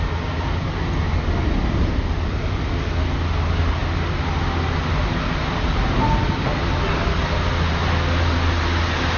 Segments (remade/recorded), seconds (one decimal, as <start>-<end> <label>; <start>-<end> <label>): 0.0-9.2 recorded